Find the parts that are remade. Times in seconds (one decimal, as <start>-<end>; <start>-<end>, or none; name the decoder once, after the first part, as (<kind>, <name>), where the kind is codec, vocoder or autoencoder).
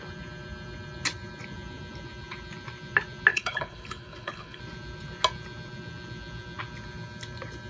3.3-4.6 (codec, HILCodec)